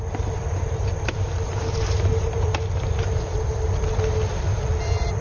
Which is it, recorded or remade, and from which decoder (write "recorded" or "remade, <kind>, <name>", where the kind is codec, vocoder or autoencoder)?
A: remade, vocoder, BigVGAN v2